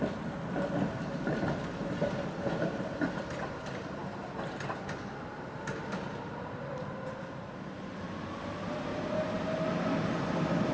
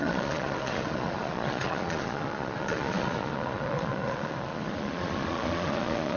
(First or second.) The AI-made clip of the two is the second